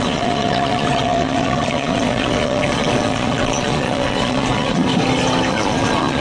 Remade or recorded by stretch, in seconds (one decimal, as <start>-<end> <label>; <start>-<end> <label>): 0.0-4.9 remade; 4.9-5.5 recorded; 5.5-6.2 remade